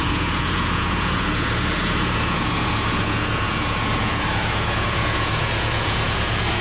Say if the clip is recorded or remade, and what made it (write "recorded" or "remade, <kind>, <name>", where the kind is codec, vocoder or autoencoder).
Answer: remade, vocoder, Vocos